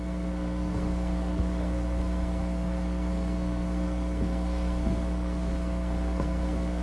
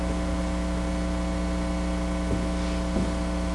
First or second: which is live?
second